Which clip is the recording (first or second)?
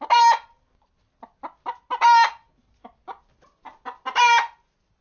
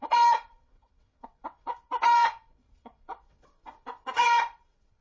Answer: first